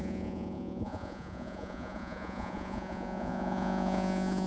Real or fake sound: fake